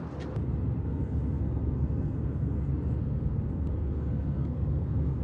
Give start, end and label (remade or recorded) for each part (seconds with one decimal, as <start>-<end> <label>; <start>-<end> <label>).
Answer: 0.0-0.8 recorded; 0.8-2.6 remade; 2.6-3.0 recorded; 3.0-5.2 remade